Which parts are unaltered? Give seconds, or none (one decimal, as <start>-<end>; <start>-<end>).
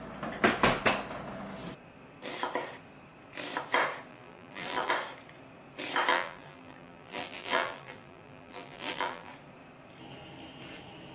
0.0-4.1; 4.9-6.1; 9.3-11.1